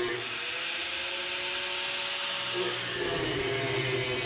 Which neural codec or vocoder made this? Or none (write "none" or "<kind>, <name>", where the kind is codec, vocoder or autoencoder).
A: none